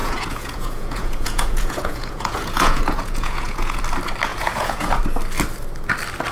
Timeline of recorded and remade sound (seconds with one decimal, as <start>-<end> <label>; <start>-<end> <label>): 0.0-3.8 remade; 3.8-4.3 recorded; 4.3-5.0 remade; 5.0-6.3 recorded